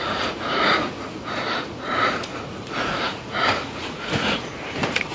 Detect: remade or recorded remade